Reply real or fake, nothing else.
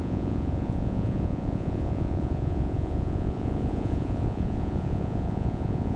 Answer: fake